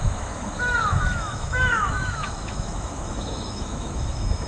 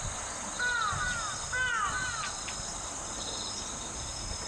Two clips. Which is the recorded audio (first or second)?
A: second